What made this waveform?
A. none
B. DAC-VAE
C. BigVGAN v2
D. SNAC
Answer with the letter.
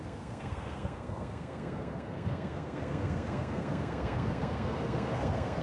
D